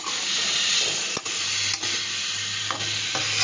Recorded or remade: recorded